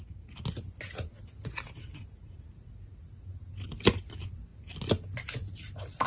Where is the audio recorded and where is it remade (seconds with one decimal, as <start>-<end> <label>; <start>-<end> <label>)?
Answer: 0.0-6.1 recorded